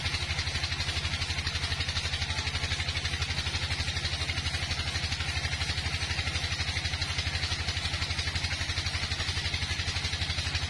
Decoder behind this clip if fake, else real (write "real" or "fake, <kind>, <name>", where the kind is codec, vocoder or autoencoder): real